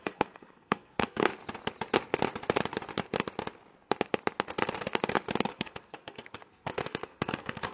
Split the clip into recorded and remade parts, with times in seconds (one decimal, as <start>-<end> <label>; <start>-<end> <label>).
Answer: 0.0-1.3 remade; 1.3-5.4 recorded; 5.4-7.7 remade